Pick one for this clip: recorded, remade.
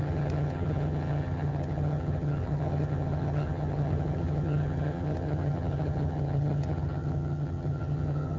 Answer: remade